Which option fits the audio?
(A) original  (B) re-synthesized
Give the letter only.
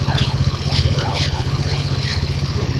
B